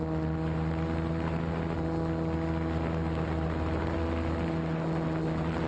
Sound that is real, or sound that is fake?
real